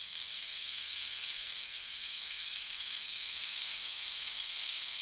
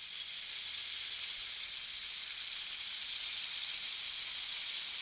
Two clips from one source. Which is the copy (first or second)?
first